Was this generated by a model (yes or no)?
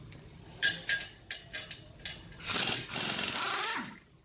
no